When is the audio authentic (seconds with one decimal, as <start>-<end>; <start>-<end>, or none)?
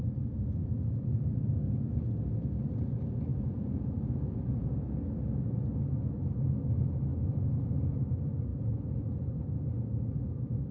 0.0-3.3; 4.8-7.1; 8.0-8.5; 9.4-10.7